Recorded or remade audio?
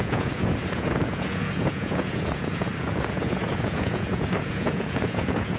remade